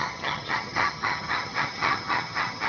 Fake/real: fake